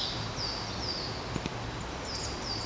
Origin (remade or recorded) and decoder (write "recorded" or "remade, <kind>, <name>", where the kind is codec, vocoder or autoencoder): recorded